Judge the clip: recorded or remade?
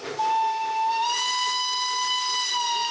recorded